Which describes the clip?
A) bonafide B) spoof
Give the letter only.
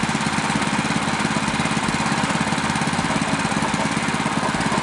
A